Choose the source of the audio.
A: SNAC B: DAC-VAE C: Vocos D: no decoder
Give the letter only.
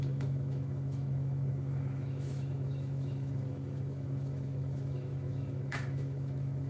B